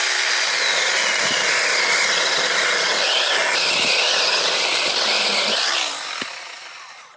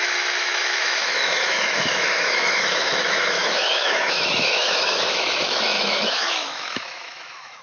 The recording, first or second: first